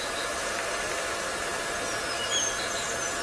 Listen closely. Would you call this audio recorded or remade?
remade